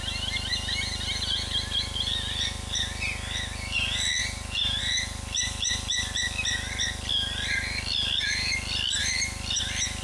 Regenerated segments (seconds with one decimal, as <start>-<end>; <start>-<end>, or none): none